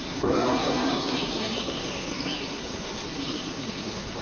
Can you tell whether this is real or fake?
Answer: fake